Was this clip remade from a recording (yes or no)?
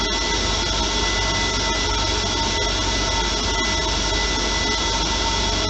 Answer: no